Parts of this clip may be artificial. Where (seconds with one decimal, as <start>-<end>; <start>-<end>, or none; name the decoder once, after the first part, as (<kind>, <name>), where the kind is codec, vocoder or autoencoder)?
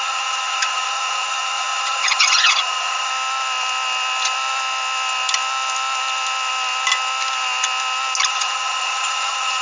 0.0-3.1 (vocoder, HiFi-GAN); 8.3-9.6